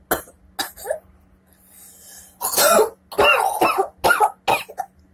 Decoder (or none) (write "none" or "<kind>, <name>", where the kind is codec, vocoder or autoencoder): none